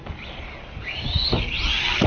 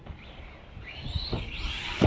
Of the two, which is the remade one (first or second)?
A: second